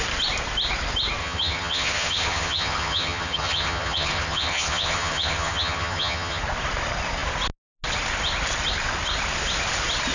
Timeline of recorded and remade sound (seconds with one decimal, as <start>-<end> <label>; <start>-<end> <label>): 0.0-1.2 recorded; 1.2-6.4 remade; 6.4-10.1 recorded